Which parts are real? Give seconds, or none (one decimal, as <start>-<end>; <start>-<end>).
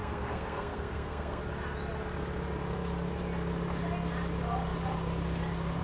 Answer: 1.4-5.8